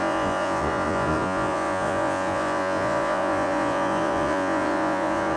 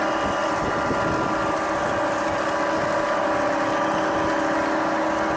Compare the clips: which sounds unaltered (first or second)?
second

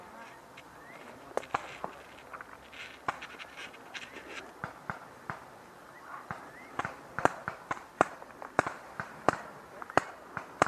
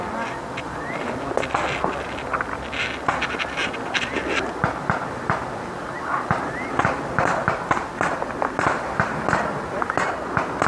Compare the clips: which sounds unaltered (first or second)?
second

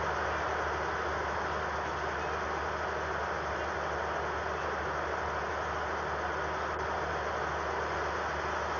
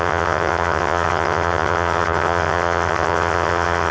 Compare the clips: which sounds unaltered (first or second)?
first